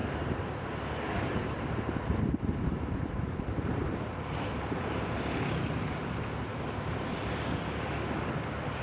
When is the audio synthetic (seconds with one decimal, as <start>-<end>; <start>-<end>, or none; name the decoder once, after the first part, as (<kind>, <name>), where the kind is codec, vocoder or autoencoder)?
0.0-5.0 (vocoder, BigVGAN v2); 6.5-7.3